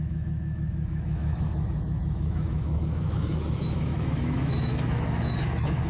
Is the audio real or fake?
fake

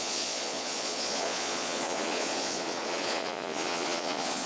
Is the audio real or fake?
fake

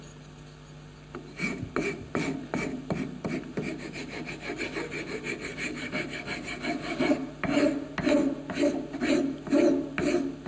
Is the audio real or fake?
real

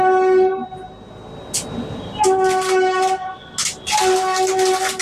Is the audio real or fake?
real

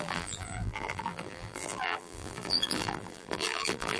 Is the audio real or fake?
fake